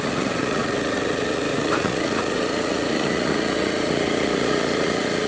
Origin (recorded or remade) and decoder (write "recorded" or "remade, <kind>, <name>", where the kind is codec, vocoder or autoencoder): remade, vocoder, Vocos